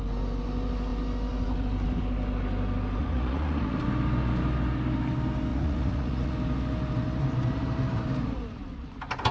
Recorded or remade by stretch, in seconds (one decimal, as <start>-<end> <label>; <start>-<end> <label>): 0.0-3.0 recorded; 3.0-3.8 remade; 3.8-5.5 recorded; 5.5-6.3 remade; 6.3-9.3 recorded